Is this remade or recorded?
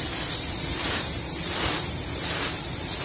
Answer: remade